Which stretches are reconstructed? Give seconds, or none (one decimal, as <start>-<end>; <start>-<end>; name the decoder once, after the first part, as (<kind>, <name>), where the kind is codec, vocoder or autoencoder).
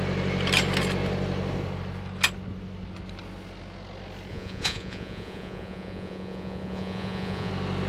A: 4.3-7.5 (vocoder, Vocos)